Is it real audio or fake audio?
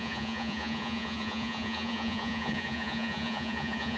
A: fake